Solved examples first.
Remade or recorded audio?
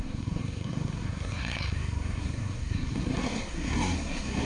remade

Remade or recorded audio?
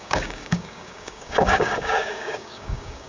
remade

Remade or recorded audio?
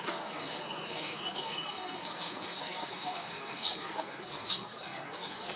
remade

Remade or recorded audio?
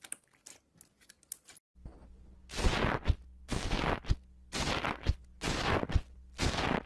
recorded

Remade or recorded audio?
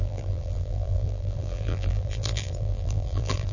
remade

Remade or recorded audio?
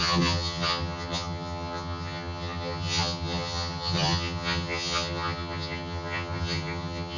remade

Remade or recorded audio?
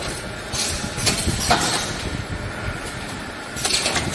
recorded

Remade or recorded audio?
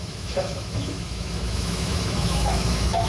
remade